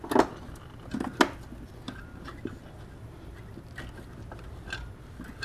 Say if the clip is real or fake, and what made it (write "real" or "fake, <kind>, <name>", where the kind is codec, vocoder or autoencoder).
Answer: real